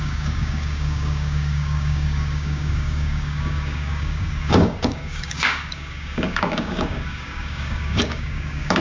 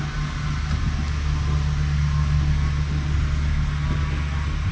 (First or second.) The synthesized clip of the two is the first